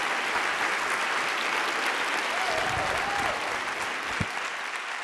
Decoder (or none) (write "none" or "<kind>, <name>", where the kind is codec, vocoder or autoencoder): none